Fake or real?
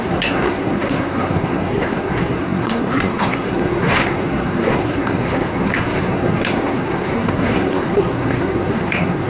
fake